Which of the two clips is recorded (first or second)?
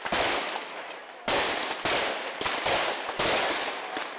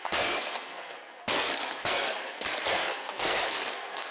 first